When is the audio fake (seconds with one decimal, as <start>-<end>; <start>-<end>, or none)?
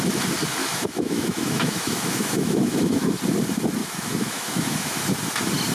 0.6-3.1; 3.8-5.0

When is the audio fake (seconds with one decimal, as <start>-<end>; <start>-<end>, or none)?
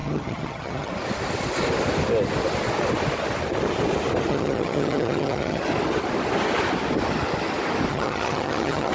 0.0-0.9; 4.3-5.6; 7.9-8.9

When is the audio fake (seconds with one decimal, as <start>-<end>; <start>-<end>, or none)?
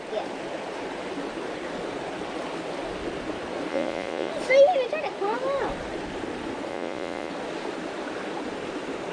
3.7-4.3; 6.7-7.3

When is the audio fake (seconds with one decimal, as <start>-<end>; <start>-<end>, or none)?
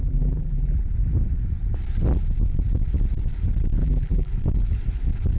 0.0-0.8; 3.8-4.3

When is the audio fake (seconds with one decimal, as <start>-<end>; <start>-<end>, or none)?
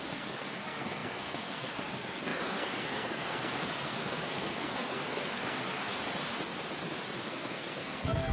0.0-5.8; 7.2-8.3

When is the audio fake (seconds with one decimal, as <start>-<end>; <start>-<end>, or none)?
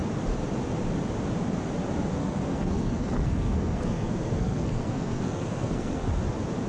2.2-6.2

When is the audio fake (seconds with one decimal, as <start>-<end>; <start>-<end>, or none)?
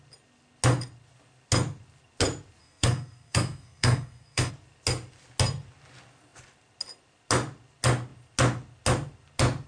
2.6-4.5